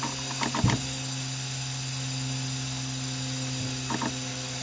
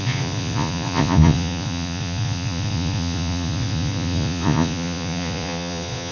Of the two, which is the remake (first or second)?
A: second